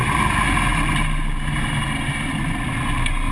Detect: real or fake real